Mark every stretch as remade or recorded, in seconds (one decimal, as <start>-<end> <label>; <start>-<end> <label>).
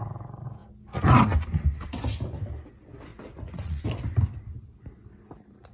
0.0-3.1 recorded; 3.1-3.8 remade; 3.8-5.7 recorded